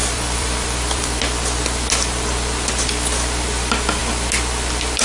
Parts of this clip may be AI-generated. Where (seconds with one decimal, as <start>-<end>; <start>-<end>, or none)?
0.0-1.2